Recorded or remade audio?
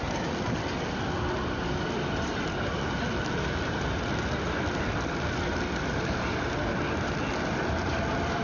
recorded